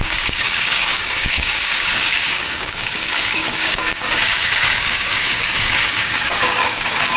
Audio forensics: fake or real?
fake